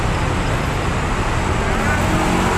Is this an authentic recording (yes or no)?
yes